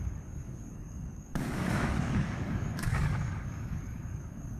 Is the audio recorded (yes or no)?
no